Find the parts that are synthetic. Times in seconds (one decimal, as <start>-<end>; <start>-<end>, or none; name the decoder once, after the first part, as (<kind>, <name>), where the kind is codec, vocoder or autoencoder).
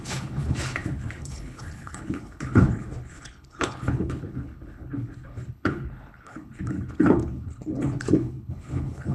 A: 0.0-9.1 (codec, HILCodec)